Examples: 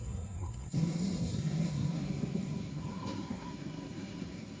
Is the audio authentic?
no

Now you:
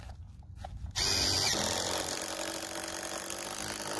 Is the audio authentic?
yes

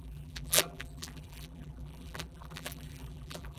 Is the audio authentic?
no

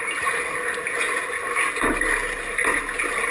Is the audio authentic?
yes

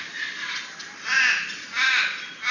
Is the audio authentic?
yes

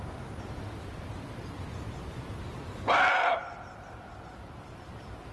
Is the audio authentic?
yes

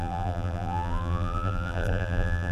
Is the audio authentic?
no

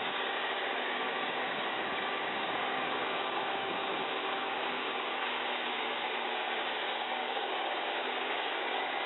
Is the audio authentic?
no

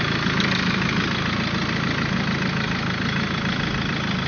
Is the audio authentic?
yes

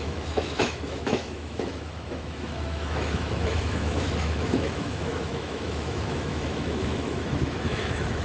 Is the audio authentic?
no